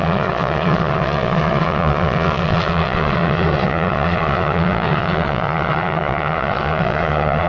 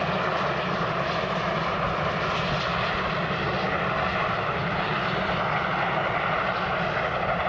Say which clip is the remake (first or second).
first